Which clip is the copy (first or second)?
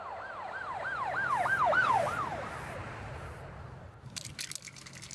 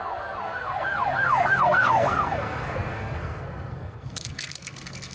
second